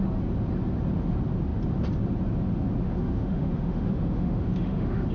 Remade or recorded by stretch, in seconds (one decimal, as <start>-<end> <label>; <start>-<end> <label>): 0.0-2.8 recorded; 2.8-5.1 remade